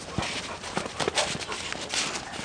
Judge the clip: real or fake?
real